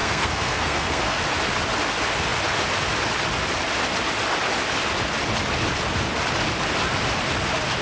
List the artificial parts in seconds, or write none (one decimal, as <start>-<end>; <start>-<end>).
0.0-1.2